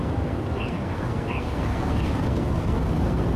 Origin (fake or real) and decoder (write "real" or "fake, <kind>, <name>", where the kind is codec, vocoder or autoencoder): fake, codec, SNAC